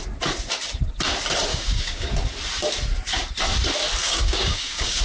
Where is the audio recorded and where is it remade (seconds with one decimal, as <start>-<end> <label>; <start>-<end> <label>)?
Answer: 0.0-1.5 recorded; 1.5-2.1 remade; 2.1-4.0 recorded; 4.0-5.0 remade